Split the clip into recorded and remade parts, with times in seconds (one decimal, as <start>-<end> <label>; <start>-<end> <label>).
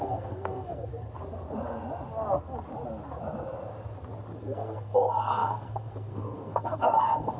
0.0-0.9 remade; 0.9-4.4 recorded; 4.4-7.4 remade